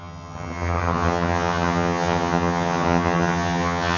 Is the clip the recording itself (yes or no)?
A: no